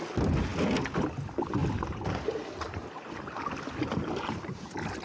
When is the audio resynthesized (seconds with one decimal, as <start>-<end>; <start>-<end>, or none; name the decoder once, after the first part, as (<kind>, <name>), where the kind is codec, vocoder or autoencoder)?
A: none